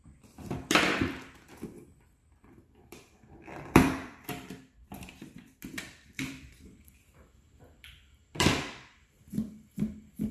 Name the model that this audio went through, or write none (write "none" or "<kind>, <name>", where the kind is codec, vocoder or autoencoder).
vocoder, BigVGAN v2